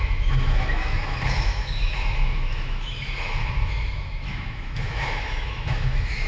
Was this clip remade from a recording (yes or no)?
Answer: yes